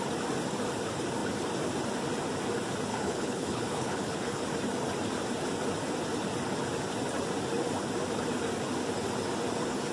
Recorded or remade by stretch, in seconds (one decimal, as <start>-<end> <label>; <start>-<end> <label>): 0.0-2.9 recorded; 2.9-4.4 remade; 4.4-9.9 recorded